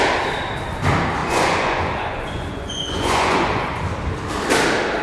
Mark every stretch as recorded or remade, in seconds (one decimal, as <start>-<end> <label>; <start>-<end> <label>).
0.0-1.2 recorded; 1.2-3.8 remade; 3.8-5.0 recorded